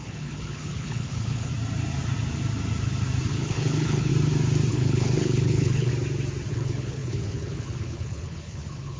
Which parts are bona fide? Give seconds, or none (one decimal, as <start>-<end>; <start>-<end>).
1.5-3.3; 4.1-4.7; 5.9-6.5